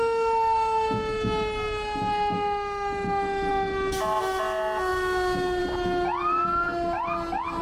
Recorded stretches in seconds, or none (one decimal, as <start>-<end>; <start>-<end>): 0.0-7.6